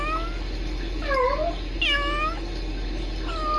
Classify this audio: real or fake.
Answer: real